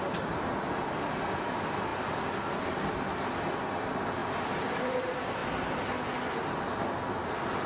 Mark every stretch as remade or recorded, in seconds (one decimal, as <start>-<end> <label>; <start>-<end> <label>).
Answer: 0.0-4.2 recorded; 4.2-4.8 remade; 4.8-7.7 recorded